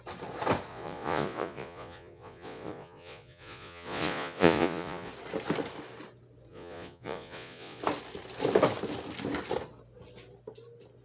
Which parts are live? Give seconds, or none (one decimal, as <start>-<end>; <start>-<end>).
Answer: 0.0-0.7; 5.1-6.5; 7.8-11.0